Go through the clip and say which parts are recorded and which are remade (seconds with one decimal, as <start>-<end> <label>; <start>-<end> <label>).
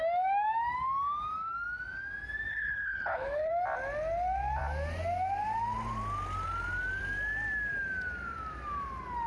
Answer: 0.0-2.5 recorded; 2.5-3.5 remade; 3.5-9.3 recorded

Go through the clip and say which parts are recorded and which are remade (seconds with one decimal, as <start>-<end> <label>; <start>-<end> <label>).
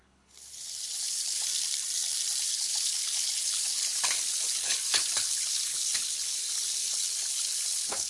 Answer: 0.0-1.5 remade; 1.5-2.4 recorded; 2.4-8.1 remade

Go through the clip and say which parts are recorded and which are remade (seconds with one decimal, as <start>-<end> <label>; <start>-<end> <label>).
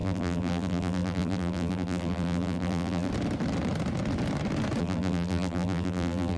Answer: 0.0-3.1 remade; 3.1-4.8 recorded; 4.8-6.4 remade